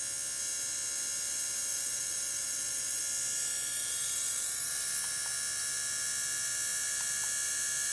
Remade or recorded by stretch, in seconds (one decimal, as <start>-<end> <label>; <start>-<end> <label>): 0.0-1.7 recorded; 1.7-3.0 remade; 3.0-3.8 recorded; 3.8-4.7 remade; 4.7-7.9 recorded